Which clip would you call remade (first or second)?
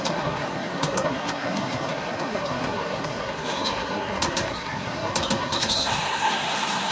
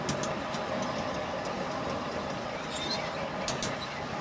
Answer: first